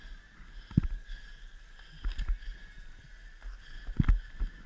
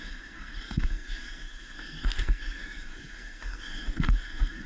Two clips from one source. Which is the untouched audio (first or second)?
first